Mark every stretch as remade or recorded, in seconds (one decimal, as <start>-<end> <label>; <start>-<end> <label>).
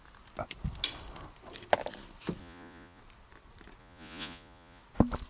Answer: 0.0-2.4 recorded; 2.4-3.0 remade; 3.0-3.8 recorded; 3.8-4.8 remade; 4.8-5.3 recorded